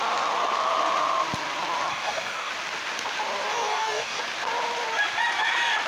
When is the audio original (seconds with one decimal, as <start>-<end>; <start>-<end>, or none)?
0.0-1.9; 2.5-3.5; 4.2-5.9